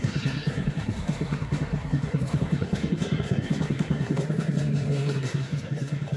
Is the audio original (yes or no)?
no